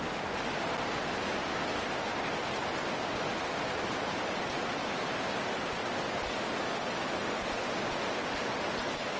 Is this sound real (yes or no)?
yes